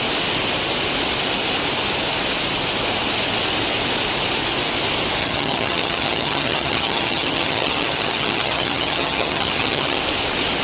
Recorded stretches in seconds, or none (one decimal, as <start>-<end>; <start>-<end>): 0.0-5.2; 10.0-10.6